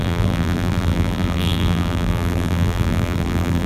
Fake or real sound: fake